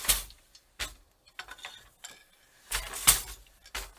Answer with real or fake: real